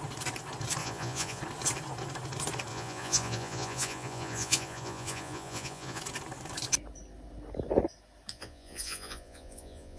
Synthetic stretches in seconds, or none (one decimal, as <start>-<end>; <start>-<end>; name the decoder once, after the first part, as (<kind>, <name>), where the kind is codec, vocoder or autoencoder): 0.8-1.4 (vocoder, Vocos); 2.7-6.0; 8.3-10.0